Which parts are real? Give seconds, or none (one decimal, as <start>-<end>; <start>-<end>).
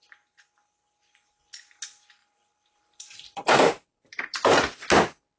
0.0-2.2; 4.5-5.4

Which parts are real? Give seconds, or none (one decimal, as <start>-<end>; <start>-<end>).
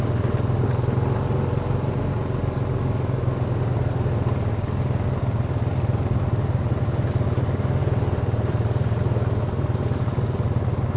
0.0-7.8; 9.0-11.0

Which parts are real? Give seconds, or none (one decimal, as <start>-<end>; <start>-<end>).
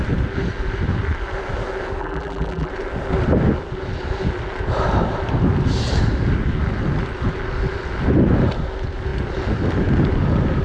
0.0-2.0; 2.7-10.6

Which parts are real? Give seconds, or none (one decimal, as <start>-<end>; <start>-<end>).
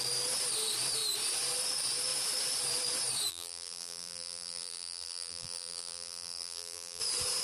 0.0-3.3; 7.0-7.4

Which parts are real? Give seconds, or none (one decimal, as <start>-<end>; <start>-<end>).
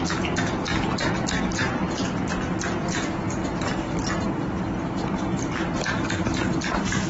0.0-7.1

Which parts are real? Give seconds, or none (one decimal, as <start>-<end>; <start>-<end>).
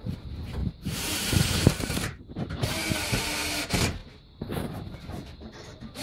0.0-0.6; 2.2-6.0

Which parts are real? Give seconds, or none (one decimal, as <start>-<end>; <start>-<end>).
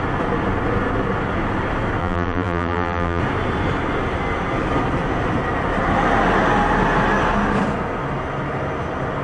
0.0-2.0; 3.2-9.2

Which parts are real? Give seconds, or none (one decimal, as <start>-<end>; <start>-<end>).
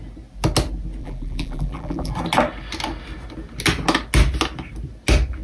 0.0-1.0; 2.1-5.4